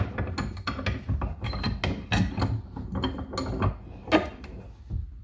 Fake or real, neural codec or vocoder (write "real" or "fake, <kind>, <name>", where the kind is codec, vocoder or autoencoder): real